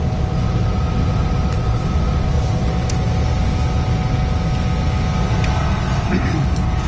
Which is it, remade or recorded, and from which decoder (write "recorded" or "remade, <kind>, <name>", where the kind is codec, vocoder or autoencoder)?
recorded